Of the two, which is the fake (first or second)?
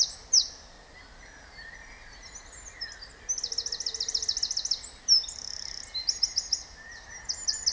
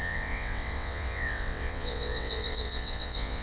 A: second